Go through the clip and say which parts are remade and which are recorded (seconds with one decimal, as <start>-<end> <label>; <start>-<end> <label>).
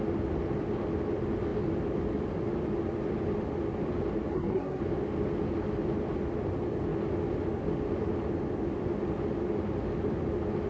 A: 0.0-4.3 recorded; 4.3-4.8 remade; 4.8-10.7 recorded